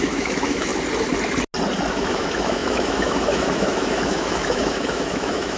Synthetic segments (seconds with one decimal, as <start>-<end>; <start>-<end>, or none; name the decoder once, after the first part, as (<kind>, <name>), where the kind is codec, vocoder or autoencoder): 0.0-0.7 (autoencoder, DAC-VAE); 1.9-5.6